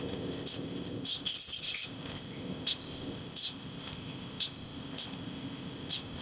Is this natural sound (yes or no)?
no